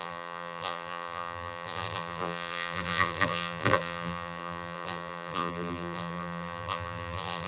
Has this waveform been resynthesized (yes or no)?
yes